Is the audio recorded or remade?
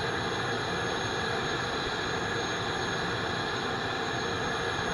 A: recorded